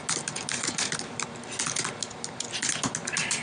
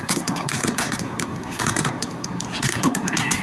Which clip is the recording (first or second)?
first